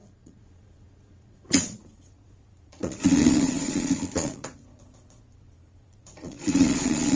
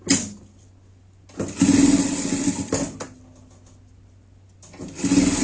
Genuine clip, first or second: second